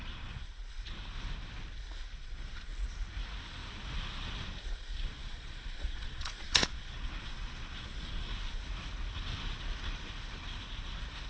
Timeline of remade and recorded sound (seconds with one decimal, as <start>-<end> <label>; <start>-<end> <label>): 0.0-0.6 remade; 0.6-2.2 recorded; 2.2-2.7 remade; 2.7-4.7 recorded; 4.7-8.3 remade; 8.3-11.3 recorded